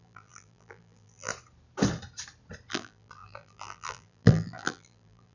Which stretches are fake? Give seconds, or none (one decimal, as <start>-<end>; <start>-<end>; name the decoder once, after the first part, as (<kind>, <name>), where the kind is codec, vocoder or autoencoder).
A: 0.0-1.3 (vocoder, BigVGAN v2); 2.7-5.3